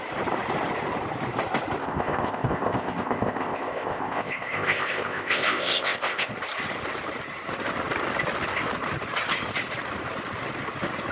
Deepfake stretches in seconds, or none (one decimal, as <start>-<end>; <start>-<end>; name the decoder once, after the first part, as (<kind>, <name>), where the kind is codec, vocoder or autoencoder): 1.8-6.3 (codec, ZipCodec)